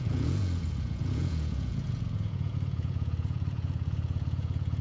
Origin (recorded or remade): remade